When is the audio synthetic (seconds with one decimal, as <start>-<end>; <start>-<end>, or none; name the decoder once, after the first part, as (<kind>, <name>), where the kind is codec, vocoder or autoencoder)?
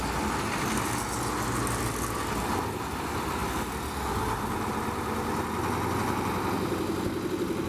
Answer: none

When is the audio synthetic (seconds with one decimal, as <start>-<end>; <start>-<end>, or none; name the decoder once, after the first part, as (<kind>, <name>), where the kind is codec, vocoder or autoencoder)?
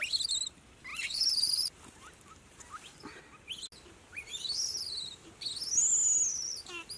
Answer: 0.9-3.2 (vocoder, BigVGAN v2); 4.1-5.3; 6.3-7.0